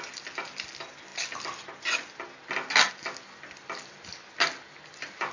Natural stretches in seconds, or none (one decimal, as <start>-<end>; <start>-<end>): 0.0-5.3

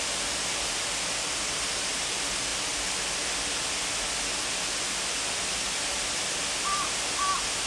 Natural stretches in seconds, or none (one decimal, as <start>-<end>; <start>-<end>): 0.0-7.7

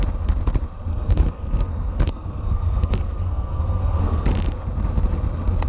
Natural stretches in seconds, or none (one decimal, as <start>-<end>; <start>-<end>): 0.0-0.9; 4.3-5.7

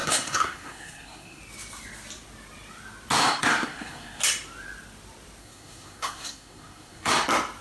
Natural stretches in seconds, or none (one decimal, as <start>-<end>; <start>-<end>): 1.4-3.2; 4.2-5.4; 7.1-7.6

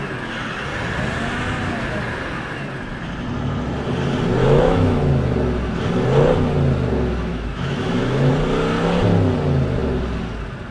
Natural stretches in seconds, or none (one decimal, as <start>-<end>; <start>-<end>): 0.0-4.4; 5.1-7.3; 8.3-10.7

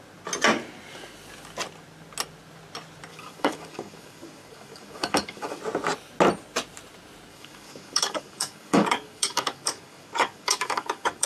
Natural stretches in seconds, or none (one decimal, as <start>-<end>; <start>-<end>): 0.0-3.1; 5.6-7.3

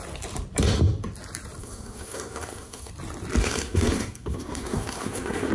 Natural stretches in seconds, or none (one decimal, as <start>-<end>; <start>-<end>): 0.0-1.6; 2.9-3.4